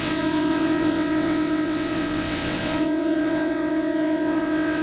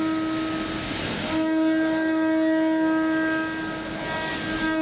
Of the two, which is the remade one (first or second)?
first